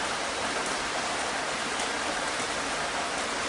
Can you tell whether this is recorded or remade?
recorded